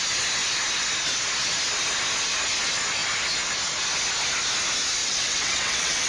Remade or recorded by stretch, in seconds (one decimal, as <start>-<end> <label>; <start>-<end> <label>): 0.0-5.0 recorded; 5.0-6.1 remade